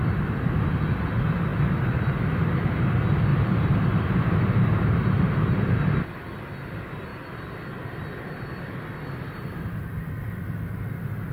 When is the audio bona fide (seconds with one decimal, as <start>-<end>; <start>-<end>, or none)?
0.0-3.3; 4.9-11.3